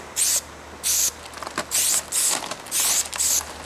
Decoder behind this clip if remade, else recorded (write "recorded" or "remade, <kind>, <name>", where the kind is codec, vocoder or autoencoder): recorded